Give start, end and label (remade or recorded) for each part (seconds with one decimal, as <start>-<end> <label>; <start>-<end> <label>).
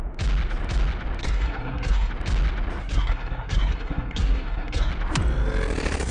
0.0-1.2 recorded; 1.2-2.1 remade; 2.1-2.8 recorded; 2.8-4.9 remade; 4.9-6.1 recorded